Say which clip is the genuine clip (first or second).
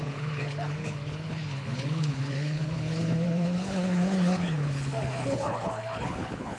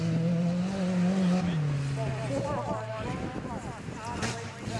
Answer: second